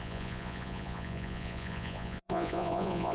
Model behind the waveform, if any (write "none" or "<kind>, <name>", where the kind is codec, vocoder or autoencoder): vocoder, Vocos